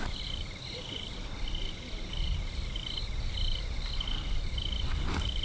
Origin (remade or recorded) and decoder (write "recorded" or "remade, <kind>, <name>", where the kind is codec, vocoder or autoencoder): recorded